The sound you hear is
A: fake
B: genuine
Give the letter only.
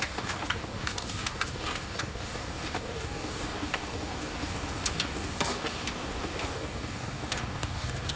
A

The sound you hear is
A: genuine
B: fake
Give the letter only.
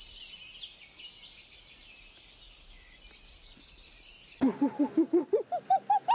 A